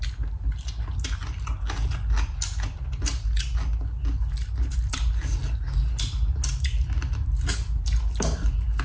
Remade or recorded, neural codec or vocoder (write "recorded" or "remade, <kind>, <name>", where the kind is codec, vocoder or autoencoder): recorded